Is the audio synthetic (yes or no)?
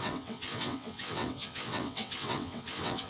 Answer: yes